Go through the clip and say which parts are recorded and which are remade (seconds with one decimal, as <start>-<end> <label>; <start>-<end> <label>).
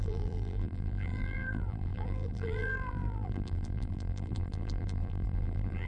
0.0-5.9 remade